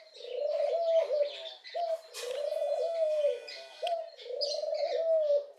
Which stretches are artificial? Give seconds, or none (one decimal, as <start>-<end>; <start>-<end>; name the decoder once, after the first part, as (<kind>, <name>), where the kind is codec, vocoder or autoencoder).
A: none